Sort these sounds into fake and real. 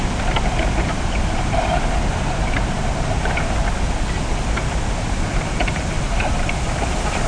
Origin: real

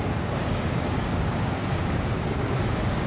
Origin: fake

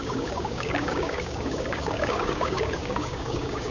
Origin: fake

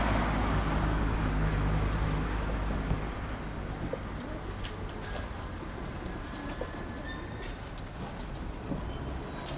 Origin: real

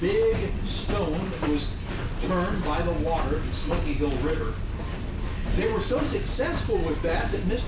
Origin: real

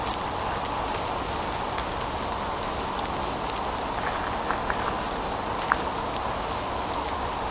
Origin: real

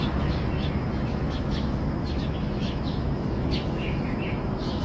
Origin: fake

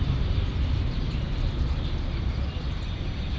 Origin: real